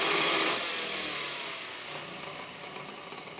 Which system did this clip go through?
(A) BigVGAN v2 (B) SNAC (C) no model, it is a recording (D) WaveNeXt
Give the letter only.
A